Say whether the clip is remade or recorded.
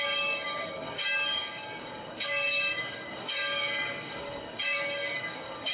remade